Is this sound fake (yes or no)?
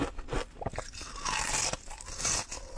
no